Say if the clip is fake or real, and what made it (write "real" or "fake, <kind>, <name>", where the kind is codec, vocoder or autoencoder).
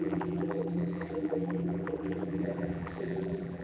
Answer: fake, vocoder, BigVGAN v2